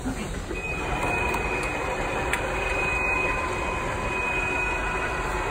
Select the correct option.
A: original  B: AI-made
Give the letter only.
A